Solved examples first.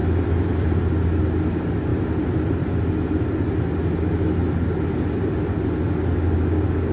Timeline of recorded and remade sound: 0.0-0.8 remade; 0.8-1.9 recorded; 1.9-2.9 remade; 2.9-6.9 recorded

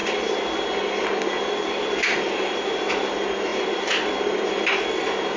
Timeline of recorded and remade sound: 0.0-3.5 recorded; 3.5-4.5 remade; 4.5-5.4 recorded

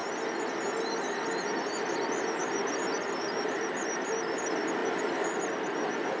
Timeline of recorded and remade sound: 0.0-6.2 recorded

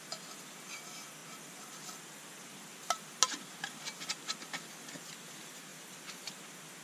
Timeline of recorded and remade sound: 0.0-5.7 recorded; 5.7-6.3 remade; 6.3-6.8 recorded

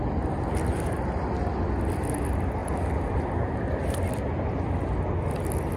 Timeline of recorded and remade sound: 0.0-5.8 recorded